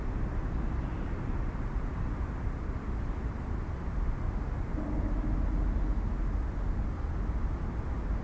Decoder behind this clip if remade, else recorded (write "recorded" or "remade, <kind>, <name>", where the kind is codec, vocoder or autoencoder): recorded